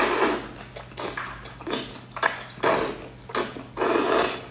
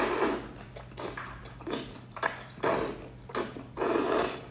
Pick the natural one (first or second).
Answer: first